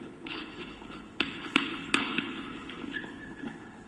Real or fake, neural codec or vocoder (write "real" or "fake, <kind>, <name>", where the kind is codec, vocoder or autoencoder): fake, codec, HILCodec